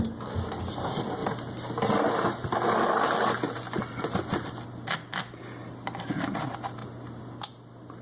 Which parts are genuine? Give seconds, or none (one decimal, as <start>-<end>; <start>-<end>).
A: 0.0-8.0